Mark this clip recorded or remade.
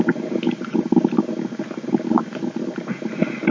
recorded